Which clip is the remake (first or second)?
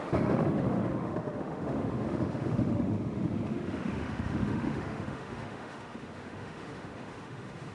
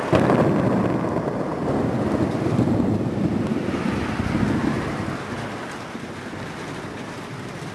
first